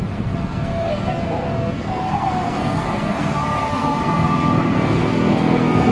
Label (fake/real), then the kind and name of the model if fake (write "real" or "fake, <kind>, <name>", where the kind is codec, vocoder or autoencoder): fake, codec, SNAC